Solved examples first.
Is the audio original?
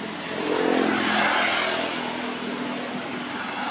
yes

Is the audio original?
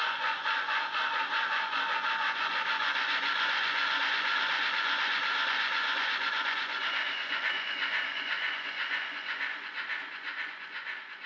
no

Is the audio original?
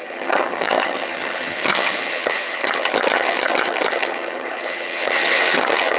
no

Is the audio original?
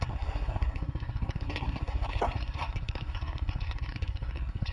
no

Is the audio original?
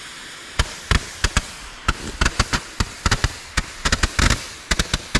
yes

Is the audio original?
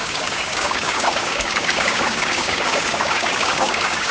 no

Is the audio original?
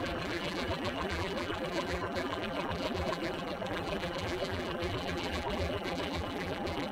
no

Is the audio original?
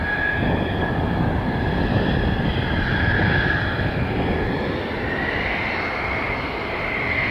yes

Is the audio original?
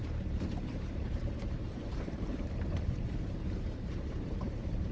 no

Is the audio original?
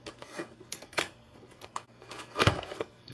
no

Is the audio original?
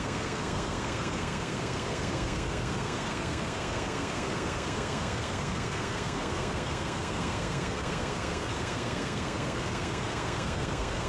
no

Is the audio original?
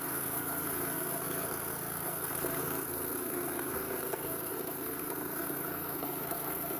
no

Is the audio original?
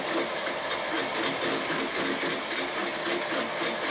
yes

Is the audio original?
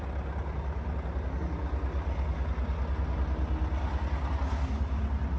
yes